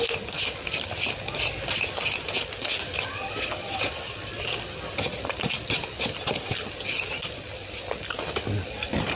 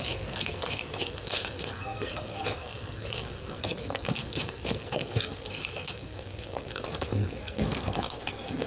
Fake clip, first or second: second